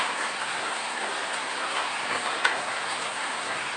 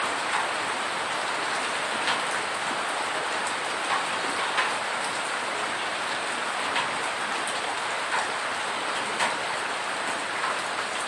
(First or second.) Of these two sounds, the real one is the second